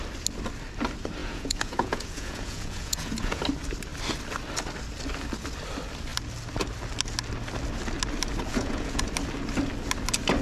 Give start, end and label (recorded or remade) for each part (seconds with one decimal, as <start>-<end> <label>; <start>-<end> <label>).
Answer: 0.0-1.2 recorded; 1.2-3.4 remade; 3.4-8.5 recorded; 8.5-9.0 remade; 9.0-10.4 recorded